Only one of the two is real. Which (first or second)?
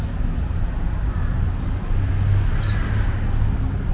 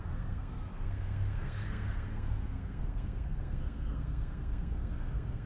first